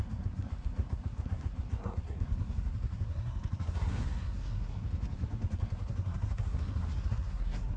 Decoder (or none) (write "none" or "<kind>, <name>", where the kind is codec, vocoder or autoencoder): codec, SNAC